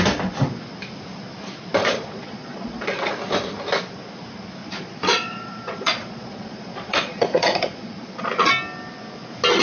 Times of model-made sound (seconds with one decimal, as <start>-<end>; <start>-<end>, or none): 1.8-3.1; 4.6-8.5